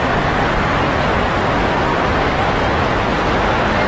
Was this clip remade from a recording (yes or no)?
no